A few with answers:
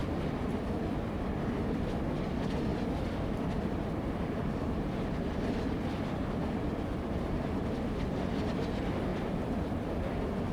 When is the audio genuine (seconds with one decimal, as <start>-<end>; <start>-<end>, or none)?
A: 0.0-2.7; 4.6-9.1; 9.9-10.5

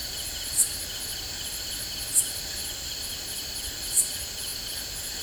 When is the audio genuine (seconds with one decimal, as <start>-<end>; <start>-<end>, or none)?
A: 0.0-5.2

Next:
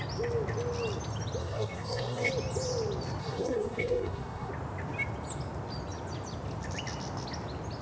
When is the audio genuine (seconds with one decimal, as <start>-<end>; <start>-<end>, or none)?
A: 0.0-1.4; 2.3-3.2; 4.5-7.8